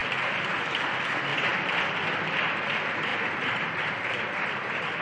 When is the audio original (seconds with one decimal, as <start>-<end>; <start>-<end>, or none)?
0.6-1.3; 1.8-3.1; 3.9-5.0